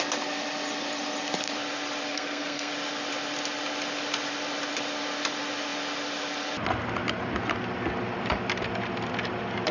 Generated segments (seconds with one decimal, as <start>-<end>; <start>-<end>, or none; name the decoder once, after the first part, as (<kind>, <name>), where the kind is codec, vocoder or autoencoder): 2.1-2.7 (codec, SNAC)